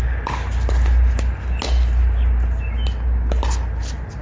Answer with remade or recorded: recorded